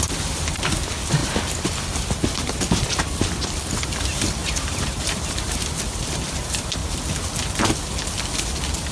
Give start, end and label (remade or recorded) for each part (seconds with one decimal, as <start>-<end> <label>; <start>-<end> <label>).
0.0-6.8 remade; 6.8-8.9 recorded